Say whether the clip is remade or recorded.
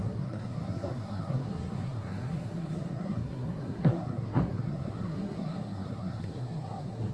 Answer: remade